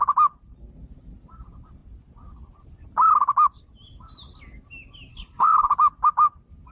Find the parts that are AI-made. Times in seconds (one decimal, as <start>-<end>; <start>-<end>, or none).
5.1-5.7